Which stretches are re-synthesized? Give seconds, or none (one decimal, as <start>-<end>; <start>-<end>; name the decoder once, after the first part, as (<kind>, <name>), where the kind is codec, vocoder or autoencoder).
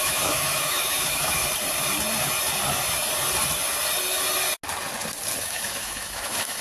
0.0-1.4 (autoencoder, DAC-VAE); 5.4-6.6